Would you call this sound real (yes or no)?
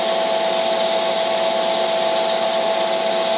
yes